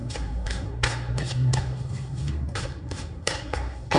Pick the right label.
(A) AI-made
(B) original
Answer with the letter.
A